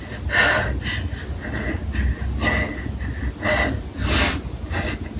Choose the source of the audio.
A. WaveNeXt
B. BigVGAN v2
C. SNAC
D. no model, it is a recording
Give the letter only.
D